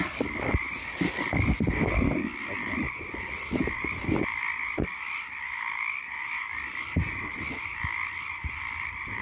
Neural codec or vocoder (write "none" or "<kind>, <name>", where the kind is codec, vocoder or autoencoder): vocoder, BigVGAN v2